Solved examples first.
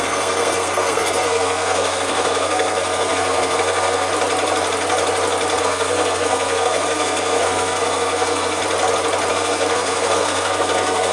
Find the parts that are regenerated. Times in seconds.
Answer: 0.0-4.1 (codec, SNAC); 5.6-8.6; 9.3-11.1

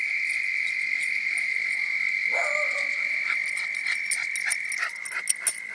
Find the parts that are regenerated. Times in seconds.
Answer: none

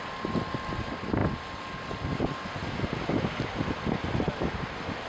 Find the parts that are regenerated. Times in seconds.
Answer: none

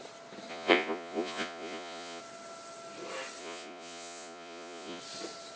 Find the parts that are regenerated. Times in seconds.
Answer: 0.5-2.2 (vocoder, Vocos); 3.4-5.0